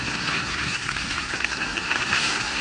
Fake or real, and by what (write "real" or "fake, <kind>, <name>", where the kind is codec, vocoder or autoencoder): fake, codec, SNAC